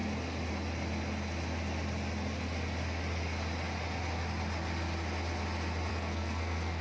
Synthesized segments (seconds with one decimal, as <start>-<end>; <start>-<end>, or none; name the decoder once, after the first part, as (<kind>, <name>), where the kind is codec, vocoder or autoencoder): 5.9-6.8 (codec, SNAC)